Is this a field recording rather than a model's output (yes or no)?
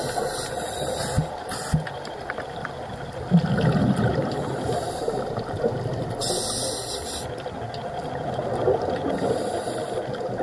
yes